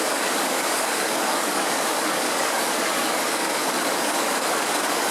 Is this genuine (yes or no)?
no